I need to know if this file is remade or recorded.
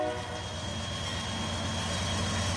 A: recorded